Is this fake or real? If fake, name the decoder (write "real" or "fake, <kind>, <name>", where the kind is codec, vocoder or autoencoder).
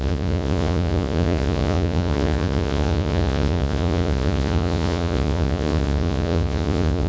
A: fake, vocoder, Vocos